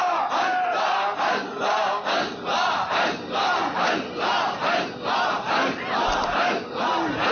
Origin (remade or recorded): recorded